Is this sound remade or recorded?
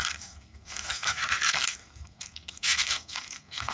remade